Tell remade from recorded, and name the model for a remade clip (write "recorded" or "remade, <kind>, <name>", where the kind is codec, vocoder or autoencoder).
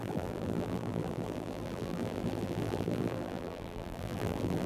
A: remade, vocoder, BigVGAN v2